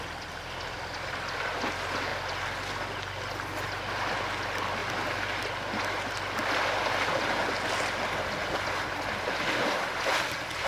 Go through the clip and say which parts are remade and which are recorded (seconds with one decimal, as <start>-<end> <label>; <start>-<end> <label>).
0.0-10.7 recorded